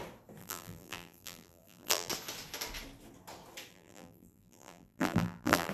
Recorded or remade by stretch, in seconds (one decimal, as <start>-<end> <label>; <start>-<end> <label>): 0.0-0.4 recorded; 0.4-2.1 remade; 2.1-3.7 recorded; 3.7-5.7 remade